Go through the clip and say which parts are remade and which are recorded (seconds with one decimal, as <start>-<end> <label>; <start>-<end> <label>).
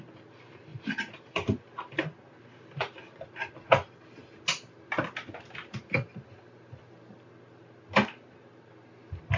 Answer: 0.0-9.4 recorded